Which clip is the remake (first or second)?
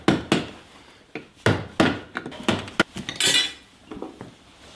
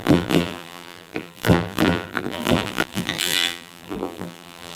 second